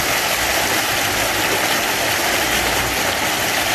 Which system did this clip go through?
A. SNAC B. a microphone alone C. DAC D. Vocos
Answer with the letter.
B